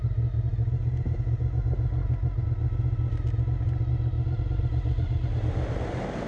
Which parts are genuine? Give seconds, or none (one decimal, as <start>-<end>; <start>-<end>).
0.0-6.3